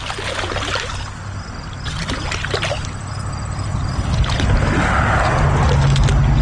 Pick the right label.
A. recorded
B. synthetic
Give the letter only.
A